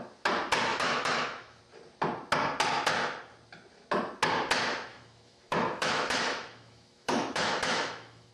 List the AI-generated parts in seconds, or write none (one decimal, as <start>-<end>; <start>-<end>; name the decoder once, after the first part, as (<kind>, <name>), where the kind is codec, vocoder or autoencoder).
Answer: 0.7-1.6 (autoencoder, DAC-VAE); 4.9-8.3